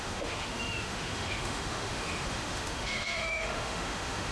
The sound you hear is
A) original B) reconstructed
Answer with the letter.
B